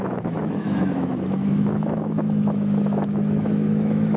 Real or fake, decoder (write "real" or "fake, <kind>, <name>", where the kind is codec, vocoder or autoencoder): fake, autoencoder, DAC-VAE